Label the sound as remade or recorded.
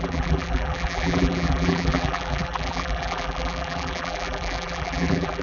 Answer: remade